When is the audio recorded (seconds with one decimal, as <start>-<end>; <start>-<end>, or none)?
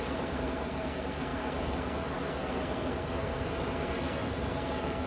none